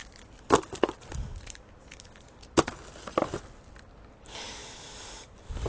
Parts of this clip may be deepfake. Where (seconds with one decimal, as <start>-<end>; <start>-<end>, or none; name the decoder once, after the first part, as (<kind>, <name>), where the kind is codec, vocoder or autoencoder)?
none